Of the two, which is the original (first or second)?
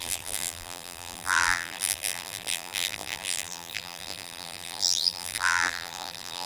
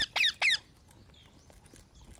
second